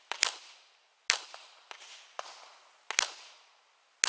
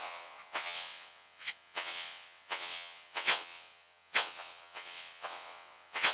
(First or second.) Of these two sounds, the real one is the first